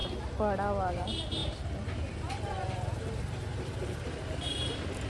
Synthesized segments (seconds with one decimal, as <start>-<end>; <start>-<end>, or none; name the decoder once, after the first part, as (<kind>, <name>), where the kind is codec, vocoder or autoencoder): 0.9-5.1 (vocoder, BigVGAN v2)